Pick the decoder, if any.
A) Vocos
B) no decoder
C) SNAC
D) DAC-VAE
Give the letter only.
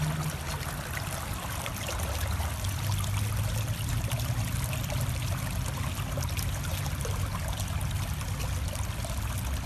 B